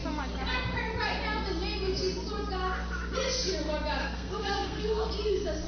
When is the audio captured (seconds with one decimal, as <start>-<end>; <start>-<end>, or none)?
0.0-4.0; 5.1-5.7

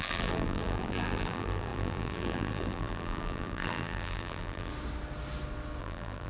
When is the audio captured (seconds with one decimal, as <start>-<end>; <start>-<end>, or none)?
4.7-5.8